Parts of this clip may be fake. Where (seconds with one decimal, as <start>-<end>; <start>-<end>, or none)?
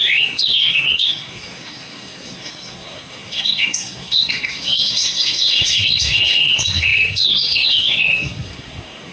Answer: 0.0-9.1